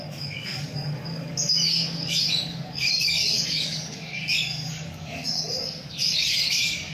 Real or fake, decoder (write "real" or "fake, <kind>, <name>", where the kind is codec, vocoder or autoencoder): fake, codec, DAC